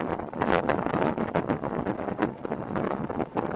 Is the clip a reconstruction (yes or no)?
yes